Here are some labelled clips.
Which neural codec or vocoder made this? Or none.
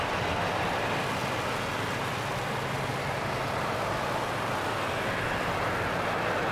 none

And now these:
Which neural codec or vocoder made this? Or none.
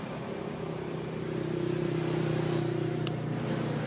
none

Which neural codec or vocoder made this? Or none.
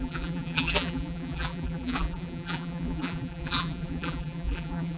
vocoder, BigVGAN v2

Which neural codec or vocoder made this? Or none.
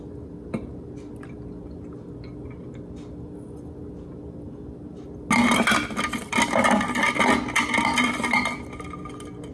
none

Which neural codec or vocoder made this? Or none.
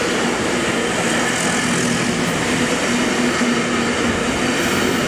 none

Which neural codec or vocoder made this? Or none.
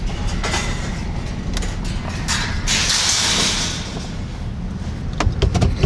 none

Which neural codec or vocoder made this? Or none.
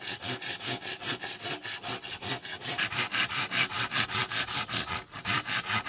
none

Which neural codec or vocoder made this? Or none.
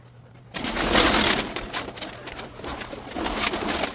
none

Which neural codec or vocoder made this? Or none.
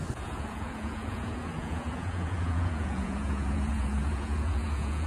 vocoder, Vocos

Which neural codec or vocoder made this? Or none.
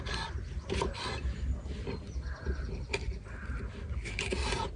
none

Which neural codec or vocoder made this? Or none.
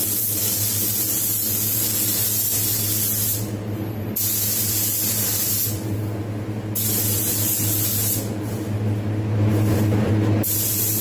none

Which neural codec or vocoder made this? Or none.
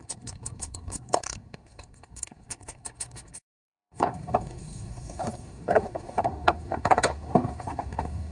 codec, SNAC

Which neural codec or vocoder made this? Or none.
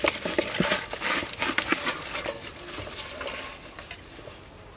none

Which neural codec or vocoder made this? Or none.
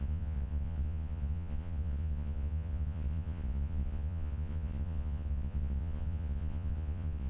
vocoder, Vocos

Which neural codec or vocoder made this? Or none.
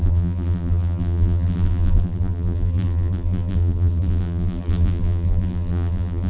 vocoder, BigVGAN v2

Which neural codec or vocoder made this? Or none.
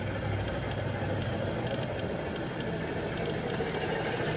none